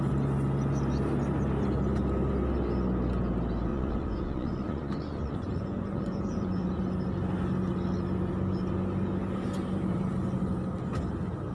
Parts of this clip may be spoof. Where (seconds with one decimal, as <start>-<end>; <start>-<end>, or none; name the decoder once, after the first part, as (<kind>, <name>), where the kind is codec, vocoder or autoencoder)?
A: 3.7-6.8 (vocoder, Vocos)